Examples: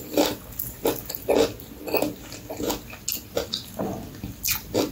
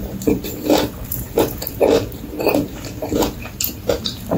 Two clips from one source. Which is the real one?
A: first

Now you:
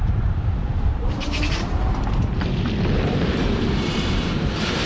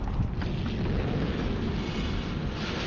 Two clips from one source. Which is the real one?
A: second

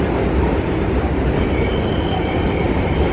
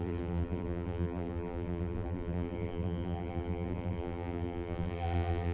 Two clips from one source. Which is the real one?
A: first